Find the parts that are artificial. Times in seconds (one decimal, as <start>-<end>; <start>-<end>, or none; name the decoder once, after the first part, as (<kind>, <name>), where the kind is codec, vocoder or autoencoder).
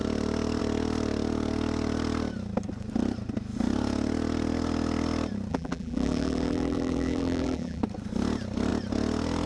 5.5-7.8 (vocoder, BigVGAN v2)